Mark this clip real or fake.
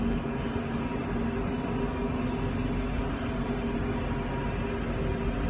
real